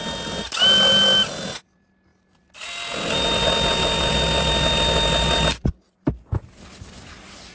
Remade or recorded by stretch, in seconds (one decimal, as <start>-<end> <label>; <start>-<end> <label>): 0.0-7.5 recorded